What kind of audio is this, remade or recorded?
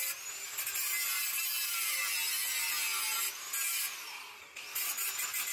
recorded